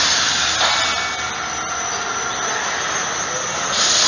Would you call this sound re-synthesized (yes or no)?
no